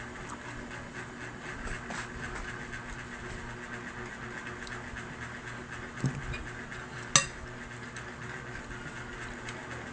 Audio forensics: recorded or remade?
recorded